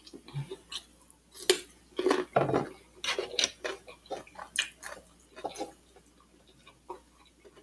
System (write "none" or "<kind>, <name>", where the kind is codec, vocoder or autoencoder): none